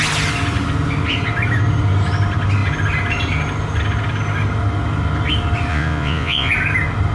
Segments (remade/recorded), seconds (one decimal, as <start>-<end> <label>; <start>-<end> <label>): 0.0-5.7 recorded; 5.7-6.5 remade; 6.5-7.1 recorded